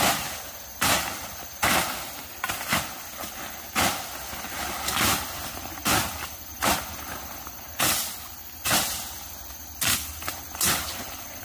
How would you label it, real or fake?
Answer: real